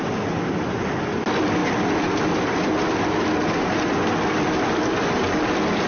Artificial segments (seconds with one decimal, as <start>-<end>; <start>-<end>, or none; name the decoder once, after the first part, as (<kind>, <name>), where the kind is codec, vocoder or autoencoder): none